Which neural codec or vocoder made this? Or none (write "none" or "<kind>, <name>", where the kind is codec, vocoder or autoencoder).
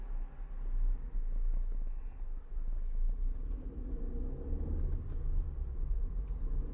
none